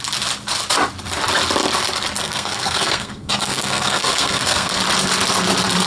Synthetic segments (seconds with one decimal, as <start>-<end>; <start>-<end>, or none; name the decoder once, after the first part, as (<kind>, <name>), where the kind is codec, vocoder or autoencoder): 2.2-4.8 (codec, SNAC)